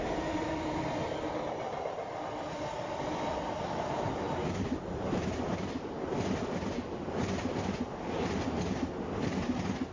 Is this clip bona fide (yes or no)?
yes